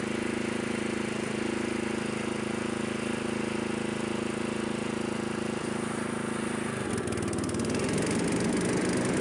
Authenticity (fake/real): real